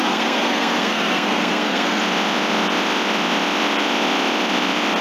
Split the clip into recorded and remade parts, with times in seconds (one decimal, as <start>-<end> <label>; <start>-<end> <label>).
0.0-2.0 remade; 2.0-5.0 recorded